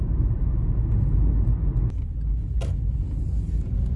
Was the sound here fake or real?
real